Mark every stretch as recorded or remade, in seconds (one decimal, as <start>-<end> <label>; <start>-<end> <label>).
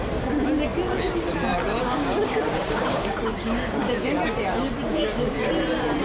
0.0-1.8 recorded; 1.8-4.1 remade; 4.1-4.9 recorded; 4.9-5.5 remade; 5.5-6.0 recorded